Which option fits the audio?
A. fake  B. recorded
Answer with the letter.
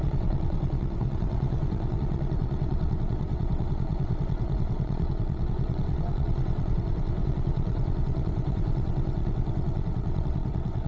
A